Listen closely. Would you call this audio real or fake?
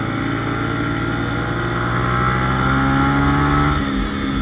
real